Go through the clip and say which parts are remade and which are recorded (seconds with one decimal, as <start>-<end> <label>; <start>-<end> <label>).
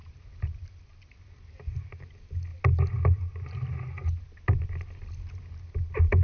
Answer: 0.0-6.2 recorded